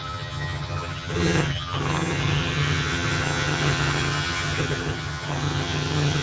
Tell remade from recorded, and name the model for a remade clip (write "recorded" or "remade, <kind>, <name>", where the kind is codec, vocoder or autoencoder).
remade, vocoder, HiFi-GAN